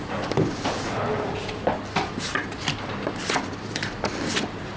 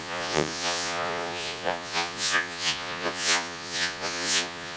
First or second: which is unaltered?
first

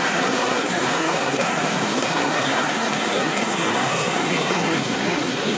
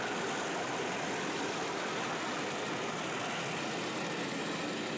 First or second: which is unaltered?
second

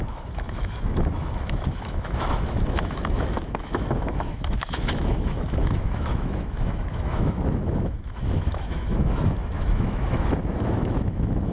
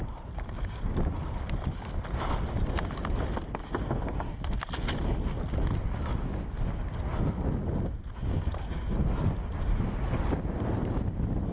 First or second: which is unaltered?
second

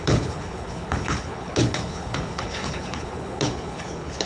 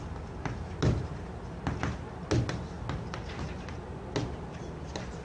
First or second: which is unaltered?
second